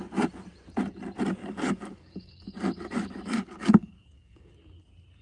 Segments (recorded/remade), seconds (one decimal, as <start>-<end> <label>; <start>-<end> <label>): 0.0-1.4 recorded; 1.4-4.5 remade; 4.5-5.2 recorded